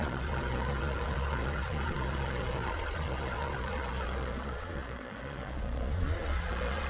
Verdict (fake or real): fake